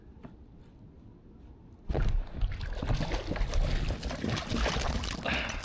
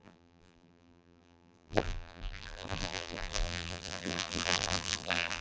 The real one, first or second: first